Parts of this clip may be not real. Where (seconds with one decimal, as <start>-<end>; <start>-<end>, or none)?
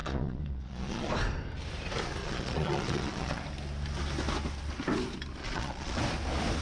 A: 0.0-1.1; 2.2-3.4; 5.4-6.0